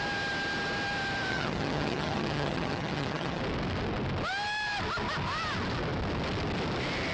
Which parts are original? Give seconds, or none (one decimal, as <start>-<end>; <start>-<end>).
0.0-1.3; 3.4-7.1